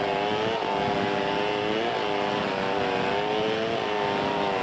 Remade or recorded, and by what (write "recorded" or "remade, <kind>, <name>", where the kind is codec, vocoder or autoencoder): recorded